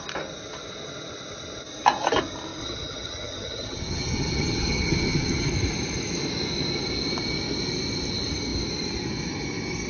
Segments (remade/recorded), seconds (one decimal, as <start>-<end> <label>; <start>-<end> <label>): 0.0-2.6 recorded; 2.6-5.5 remade; 5.5-9.9 recorded